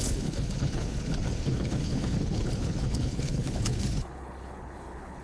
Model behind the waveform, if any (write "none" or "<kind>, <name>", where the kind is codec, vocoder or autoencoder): codec, HILCodec